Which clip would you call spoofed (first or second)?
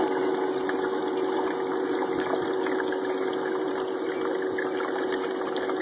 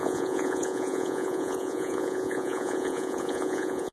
second